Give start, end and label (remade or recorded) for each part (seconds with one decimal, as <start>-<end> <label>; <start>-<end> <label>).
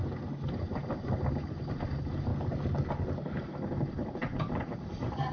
0.0-0.5 recorded; 0.5-2.3 remade; 2.3-3.4 recorded; 3.4-5.3 remade